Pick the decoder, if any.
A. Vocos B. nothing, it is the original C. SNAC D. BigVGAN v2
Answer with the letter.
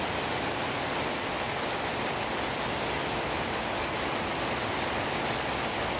B